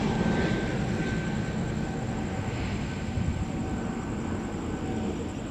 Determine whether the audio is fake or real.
real